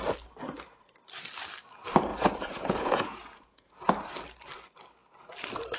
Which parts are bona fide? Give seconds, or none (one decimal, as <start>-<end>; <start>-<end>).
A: 0.0-2.1; 3.9-5.8